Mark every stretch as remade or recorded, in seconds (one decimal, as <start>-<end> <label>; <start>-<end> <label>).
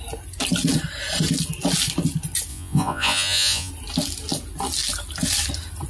0.0-2.5 recorded; 2.5-3.7 remade; 3.7-5.9 recorded